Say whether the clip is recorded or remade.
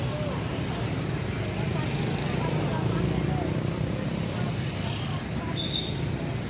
recorded